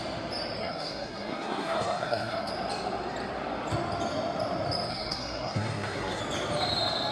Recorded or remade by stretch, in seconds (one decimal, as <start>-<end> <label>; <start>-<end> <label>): 0.0-0.6 recorded; 0.6-2.5 remade; 2.5-4.9 recorded; 4.9-6.2 remade; 6.2-7.1 recorded